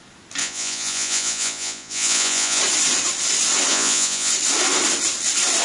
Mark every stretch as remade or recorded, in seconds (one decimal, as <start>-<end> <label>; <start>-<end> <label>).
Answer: 0.0-0.4 recorded; 0.4-2.6 remade; 2.6-3.7 recorded; 3.7-4.3 remade; 4.3-5.6 recorded